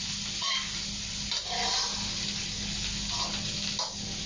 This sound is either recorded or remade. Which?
recorded